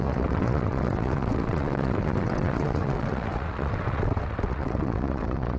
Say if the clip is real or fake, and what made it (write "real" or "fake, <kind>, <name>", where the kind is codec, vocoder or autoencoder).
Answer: fake, vocoder, WaveNeXt